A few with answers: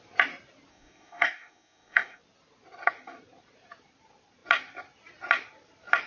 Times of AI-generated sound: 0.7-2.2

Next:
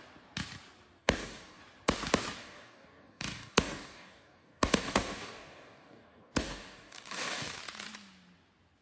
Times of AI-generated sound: 1.0-1.6; 2.4-7.6

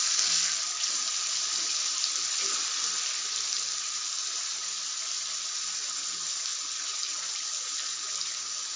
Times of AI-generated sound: none

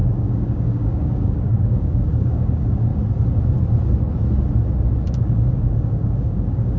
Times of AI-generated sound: 0.0-2.9; 5.2-6.8

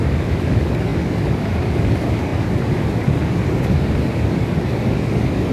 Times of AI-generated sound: 0.0-5.5

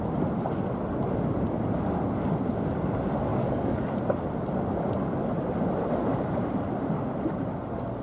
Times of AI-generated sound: 3.3-3.8

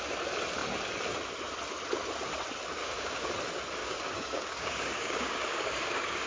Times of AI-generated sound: 2.8-3.3; 3.8-6.3

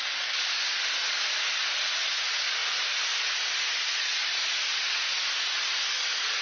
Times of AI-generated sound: none